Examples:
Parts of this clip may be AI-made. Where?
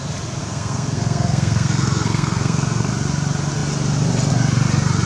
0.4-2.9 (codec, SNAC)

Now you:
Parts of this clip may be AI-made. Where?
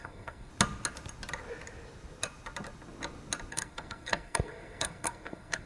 0.0-0.5 (codec, SNAC); 3.5-5.7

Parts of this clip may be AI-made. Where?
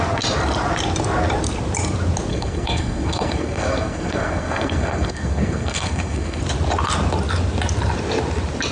2.3-6.4 (codec, SNAC)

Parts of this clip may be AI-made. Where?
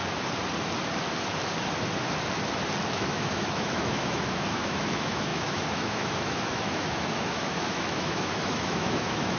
2.9-9.4 (autoencoder, DAC-VAE)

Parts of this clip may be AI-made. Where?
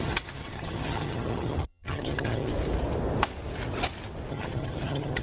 0.0-2.5 (vocoder, HiFi-GAN); 4.3-5.2